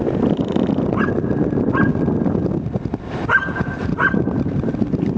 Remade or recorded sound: remade